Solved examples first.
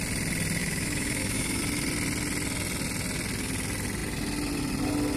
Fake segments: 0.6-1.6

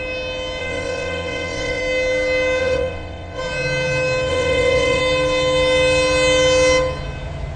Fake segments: 0.6-1.8; 2.6-3.4; 4.3-5.0

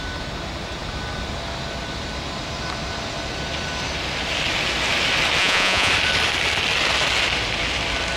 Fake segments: 5.4-5.9